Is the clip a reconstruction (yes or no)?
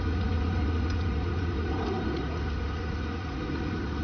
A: yes